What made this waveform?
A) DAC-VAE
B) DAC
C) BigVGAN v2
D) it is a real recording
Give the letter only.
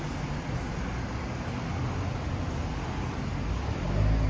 D